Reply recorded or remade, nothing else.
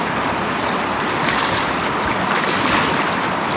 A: recorded